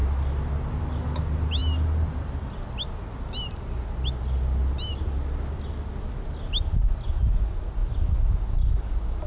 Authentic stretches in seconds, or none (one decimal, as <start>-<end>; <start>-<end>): 0.0-9.3